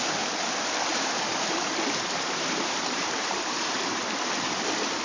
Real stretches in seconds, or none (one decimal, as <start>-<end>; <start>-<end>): 0.0-0.9; 3.9-5.0